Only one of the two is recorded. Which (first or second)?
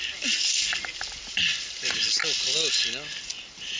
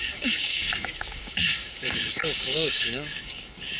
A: first